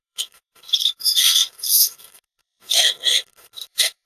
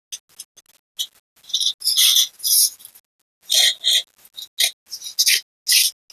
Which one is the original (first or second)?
second